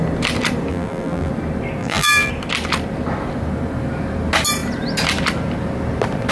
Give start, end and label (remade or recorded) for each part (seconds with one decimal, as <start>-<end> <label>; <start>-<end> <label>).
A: 0.0-0.7 recorded; 0.7-1.3 remade; 1.3-1.8 recorded; 1.8-2.3 remade; 2.3-6.3 recorded